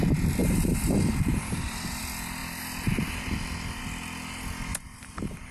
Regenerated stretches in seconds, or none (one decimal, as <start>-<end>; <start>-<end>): 0.4-2.0; 4.7-5.5